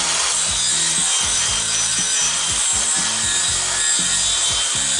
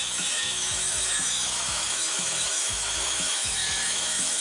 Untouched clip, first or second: first